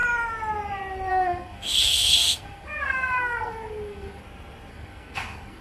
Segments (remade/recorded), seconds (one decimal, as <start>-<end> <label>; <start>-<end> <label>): 0.0-1.1 recorded; 1.1-4.2 remade; 4.2-4.7 recorded; 4.7-5.6 remade

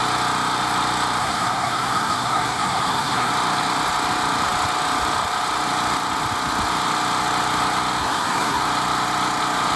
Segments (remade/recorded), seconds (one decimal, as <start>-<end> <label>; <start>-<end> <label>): 0.0-1.2 recorded; 1.2-3.3 remade; 3.3-8.0 recorded; 8.0-8.6 remade; 8.6-9.8 recorded